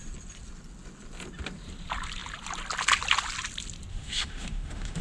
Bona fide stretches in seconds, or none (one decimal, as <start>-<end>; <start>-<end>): 0.0-3.9